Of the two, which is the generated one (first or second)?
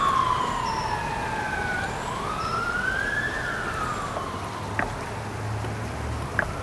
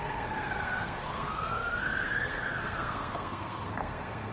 second